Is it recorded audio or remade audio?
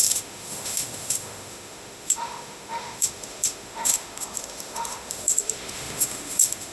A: remade